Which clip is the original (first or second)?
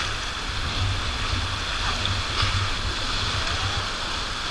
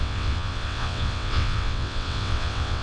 first